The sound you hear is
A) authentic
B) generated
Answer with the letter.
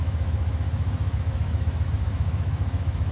B